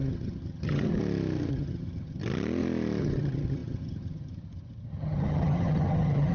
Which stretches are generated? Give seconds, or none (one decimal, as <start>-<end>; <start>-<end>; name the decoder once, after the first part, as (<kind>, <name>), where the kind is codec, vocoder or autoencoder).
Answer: 0.0-1.0 (vocoder, HiFi-GAN); 1.5-2.2; 3.0-6.3

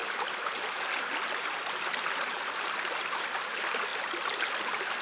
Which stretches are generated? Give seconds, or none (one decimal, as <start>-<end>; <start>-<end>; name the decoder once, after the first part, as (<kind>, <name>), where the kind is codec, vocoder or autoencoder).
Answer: none

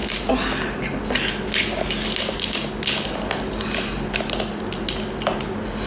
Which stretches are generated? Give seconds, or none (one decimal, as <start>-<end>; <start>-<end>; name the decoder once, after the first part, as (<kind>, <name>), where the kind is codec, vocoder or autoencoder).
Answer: none

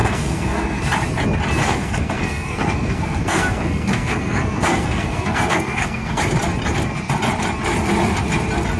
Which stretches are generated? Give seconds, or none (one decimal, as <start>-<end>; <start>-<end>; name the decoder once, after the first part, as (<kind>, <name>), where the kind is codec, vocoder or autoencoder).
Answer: 0.0-0.8 (codec, SNAC); 1.6-6.2

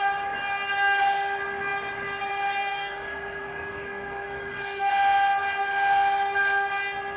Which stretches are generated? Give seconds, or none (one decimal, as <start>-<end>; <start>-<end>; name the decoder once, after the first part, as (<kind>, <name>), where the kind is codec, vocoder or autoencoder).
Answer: 2.7-4.9 (codec, SNAC)

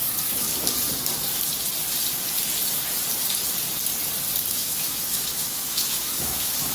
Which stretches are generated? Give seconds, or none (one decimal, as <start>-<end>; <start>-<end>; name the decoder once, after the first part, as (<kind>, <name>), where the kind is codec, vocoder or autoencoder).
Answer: 0.0-0.5 (autoencoder, DAC-VAE); 4.5-6.7